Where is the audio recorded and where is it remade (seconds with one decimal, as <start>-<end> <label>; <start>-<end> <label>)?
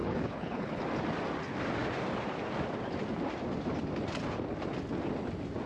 0.0-0.8 remade; 0.8-5.7 recorded